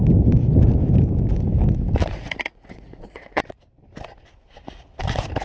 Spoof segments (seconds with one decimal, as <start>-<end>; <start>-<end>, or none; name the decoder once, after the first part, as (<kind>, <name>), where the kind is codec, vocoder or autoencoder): 2.0-3.4 (vocoder, Vocos)